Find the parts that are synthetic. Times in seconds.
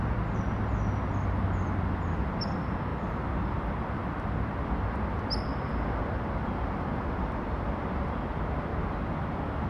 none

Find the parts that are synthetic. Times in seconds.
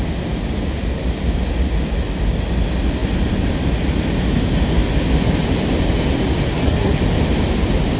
6.5-7.0 (codec, SNAC)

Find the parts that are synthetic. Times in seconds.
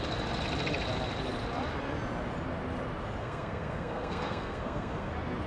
3.2-5.1 (codec, SNAC)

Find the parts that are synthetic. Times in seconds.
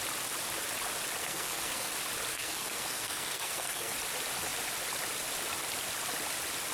1.2-1.9 (codec, SNAC); 2.3-4.0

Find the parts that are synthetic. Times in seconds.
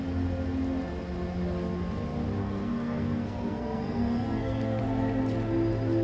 2.4-4.8 (codec, SNAC)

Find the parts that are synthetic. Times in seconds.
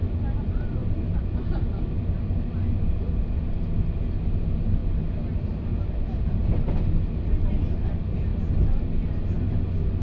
none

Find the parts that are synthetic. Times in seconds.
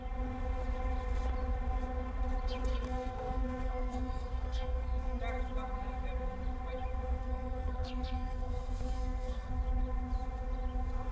2.7-5.2 (codec, SNAC); 7.2-9.5